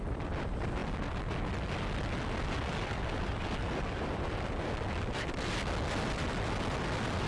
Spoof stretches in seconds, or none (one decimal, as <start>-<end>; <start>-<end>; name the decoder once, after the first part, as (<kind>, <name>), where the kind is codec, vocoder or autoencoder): none